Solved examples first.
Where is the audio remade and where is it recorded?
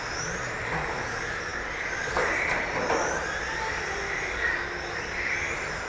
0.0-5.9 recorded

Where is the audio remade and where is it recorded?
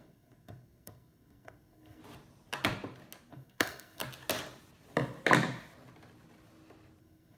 0.0-2.0 remade; 2.0-3.3 recorded; 3.3-4.0 remade; 4.0-7.0 recorded; 7.0-7.4 remade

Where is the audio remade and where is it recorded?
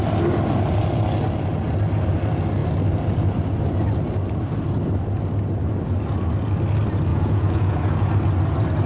0.0-7.1 recorded; 7.1-8.1 remade; 8.1-8.9 recorded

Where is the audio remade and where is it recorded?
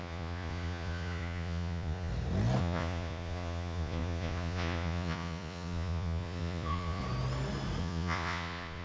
0.0-2.1 remade; 2.1-2.6 recorded; 2.6-7.0 remade; 7.0-7.8 recorded; 7.8-8.8 remade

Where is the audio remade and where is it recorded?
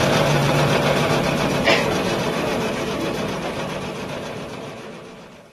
0.0-5.5 remade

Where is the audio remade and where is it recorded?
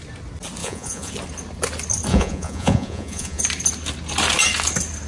0.0-0.6 recorded; 0.6-1.1 remade; 1.1-2.1 recorded; 2.1-3.4 remade; 3.4-5.1 recorded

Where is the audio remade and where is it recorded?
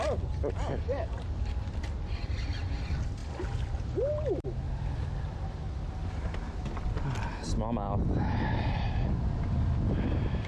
0.0-10.5 recorded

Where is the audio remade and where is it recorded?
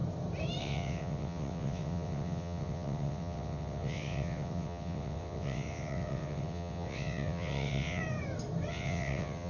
0.0-0.6 recorded; 0.6-8.0 remade; 8.0-8.7 recorded; 8.7-9.5 remade